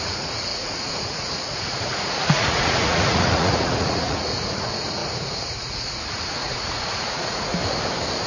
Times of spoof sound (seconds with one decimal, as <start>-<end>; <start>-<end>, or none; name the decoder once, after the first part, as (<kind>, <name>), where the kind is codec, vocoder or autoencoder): 0.0-7.5 (vocoder, Vocos)